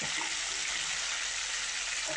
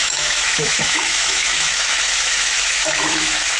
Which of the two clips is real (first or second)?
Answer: first